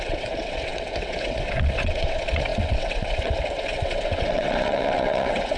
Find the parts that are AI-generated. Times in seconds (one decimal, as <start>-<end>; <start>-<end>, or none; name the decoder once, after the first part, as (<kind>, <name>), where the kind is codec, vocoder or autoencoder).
0.0-5.6 (vocoder, WaveNeXt)